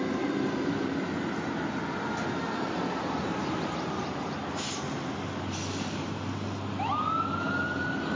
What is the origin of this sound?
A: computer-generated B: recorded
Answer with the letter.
B